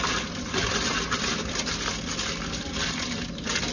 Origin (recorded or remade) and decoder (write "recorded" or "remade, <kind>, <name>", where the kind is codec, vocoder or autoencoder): recorded